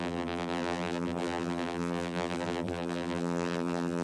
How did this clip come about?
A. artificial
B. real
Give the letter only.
A